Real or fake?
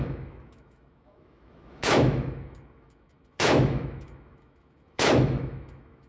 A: fake